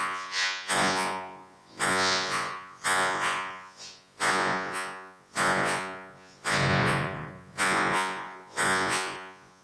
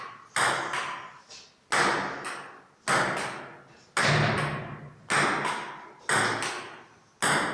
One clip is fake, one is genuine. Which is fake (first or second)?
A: first